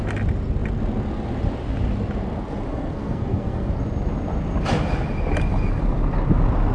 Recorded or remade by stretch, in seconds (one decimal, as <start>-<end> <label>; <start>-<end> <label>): 0.0-2.7 recorded; 2.7-3.7 remade; 3.7-6.7 recorded